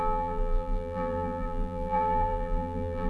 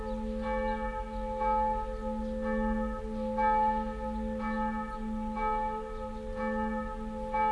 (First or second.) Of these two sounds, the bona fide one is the second